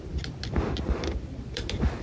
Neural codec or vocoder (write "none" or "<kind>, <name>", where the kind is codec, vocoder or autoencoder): vocoder, BigVGAN v2